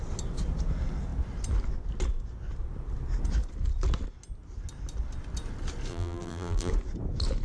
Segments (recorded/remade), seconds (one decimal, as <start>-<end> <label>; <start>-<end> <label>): 0.0-5.9 recorded; 5.9-6.7 remade; 6.7-7.4 recorded